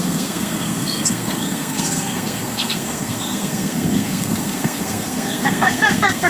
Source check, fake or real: fake